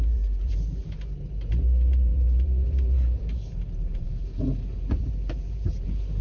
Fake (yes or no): yes